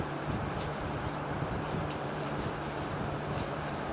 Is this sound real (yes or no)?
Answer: no